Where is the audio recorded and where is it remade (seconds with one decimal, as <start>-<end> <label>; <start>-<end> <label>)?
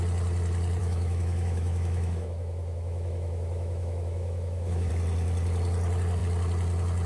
0.0-0.8 recorded; 0.8-4.9 remade; 4.9-7.1 recorded